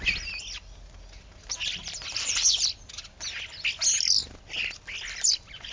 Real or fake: real